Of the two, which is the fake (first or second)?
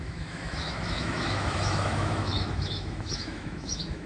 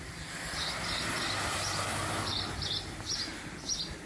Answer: first